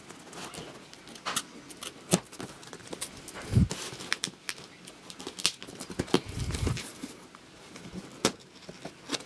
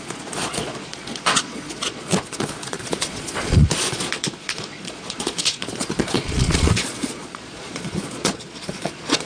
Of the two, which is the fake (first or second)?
second